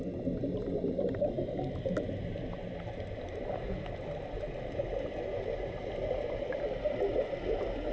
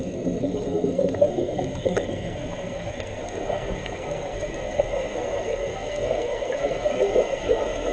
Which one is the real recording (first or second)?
first